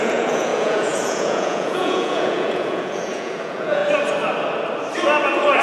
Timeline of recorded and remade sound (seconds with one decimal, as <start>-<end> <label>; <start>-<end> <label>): 0.0-3.8 remade; 3.8-5.6 recorded